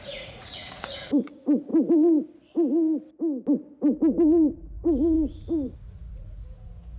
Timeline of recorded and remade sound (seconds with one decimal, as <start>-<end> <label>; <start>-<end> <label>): 0.0-1.7 remade; 1.7-4.0 recorded; 4.0-7.0 remade